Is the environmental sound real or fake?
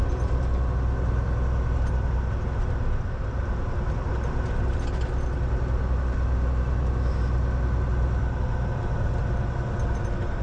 real